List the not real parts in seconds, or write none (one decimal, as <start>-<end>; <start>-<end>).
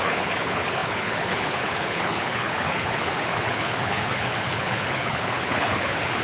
0.0-6.2